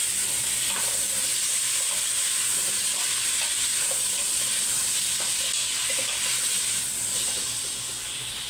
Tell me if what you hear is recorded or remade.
recorded